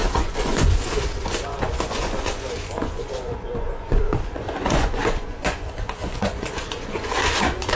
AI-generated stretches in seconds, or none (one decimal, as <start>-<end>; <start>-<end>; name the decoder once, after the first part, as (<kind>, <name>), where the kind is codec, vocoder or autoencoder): 0.0-7.7 (vocoder, Vocos)